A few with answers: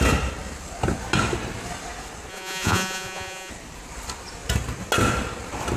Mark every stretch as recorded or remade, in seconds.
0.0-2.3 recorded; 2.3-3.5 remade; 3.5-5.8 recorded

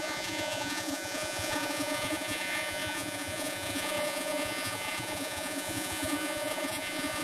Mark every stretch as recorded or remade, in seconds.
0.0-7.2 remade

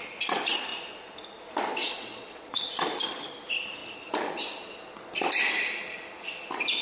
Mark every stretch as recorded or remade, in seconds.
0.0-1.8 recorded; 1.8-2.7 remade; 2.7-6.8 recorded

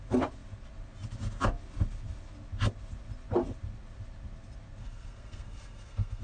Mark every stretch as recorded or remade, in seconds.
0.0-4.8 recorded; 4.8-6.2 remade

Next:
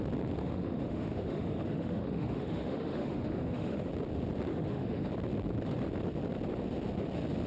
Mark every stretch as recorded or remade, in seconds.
0.0-0.4 recorded; 0.4-3.9 remade; 3.9-4.5 recorded; 4.5-5.1 remade; 5.1-7.5 recorded

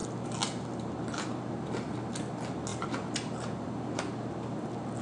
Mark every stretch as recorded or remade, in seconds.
0.0-2.7 recorded; 2.7-4.0 remade; 4.0-5.0 recorded